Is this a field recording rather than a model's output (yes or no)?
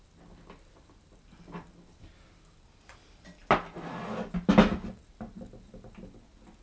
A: yes